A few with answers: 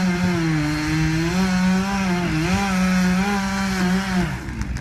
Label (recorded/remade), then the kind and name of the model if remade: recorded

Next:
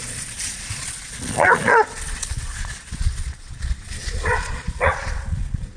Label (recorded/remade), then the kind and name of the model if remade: remade, vocoder, Vocos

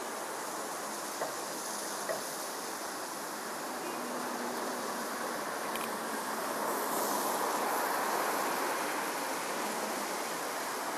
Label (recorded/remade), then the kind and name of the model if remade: recorded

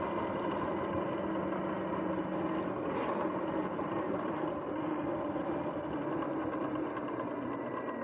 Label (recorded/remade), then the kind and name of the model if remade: recorded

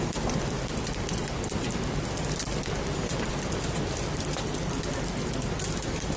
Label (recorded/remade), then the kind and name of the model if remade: remade, vocoder, BigVGAN v2